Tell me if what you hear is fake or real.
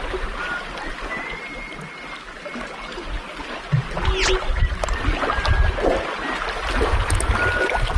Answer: real